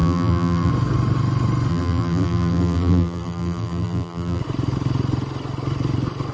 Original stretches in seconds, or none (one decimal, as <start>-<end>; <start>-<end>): 0.7-1.7; 4.4-6.3

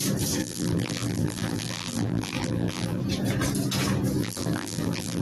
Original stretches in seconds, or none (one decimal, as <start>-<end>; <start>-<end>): 0.0-0.4; 3.0-4.2

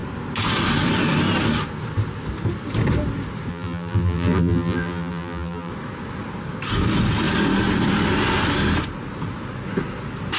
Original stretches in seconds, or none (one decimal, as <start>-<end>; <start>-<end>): 0.0-3.5; 5.7-10.4

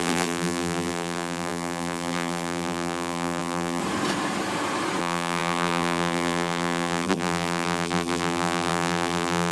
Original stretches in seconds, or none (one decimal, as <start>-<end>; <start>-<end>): 3.8-5.0

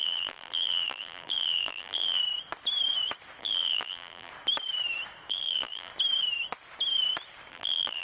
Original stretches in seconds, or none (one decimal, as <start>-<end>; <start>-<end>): 2.2-3.4; 4.3-5.3; 5.9-7.5

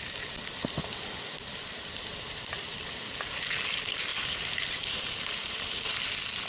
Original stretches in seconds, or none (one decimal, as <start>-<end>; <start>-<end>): 0.0-4.1; 6.0-6.5

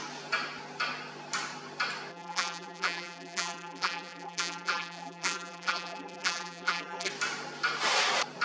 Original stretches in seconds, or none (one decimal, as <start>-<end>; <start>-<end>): 0.0-2.1; 7.1-8.4